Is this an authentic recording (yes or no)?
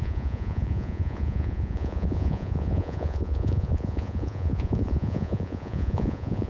no